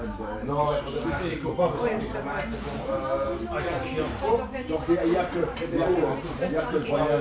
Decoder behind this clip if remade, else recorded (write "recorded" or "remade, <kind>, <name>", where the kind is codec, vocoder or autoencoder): remade, vocoder, BigVGAN v2